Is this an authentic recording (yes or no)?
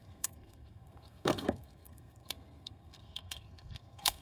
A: no